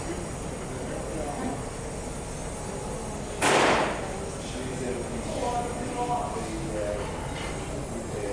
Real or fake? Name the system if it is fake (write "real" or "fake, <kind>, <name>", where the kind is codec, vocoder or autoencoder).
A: real